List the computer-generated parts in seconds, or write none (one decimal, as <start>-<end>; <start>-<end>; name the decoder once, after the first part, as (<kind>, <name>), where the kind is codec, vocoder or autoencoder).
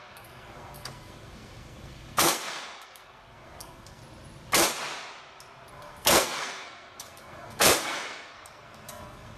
0.0-4.0 (codec, SNAC); 5.7-9.4